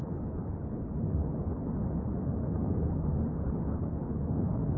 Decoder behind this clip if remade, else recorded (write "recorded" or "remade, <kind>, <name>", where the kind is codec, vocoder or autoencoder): remade, codec, HILCodec